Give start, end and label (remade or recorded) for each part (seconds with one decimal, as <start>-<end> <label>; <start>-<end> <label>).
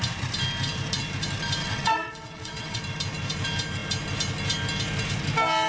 0.0-1.6 recorded; 1.6-2.8 remade; 2.8-5.7 recorded